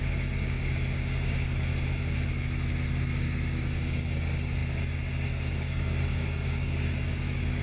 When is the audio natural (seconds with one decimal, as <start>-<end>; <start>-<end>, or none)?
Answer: 1.7-2.9